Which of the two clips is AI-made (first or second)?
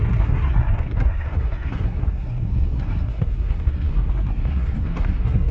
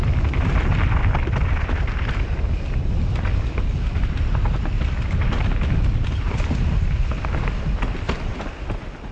first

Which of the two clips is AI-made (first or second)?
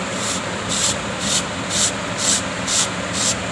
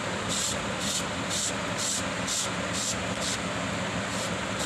first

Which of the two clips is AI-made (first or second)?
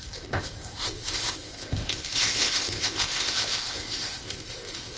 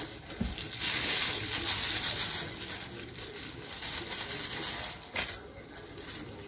first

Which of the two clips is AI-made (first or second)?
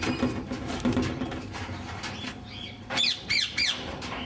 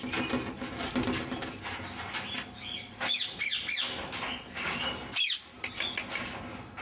first